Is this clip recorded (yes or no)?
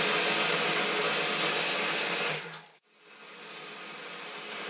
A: yes